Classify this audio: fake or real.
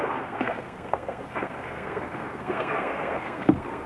fake